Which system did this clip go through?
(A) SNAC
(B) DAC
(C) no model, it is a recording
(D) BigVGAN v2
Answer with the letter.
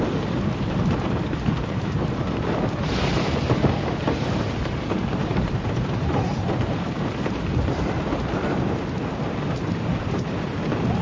D